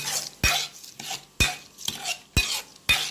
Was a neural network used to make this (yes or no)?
no